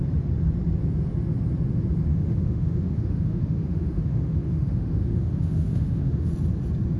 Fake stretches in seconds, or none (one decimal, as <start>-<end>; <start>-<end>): 2.1-6.3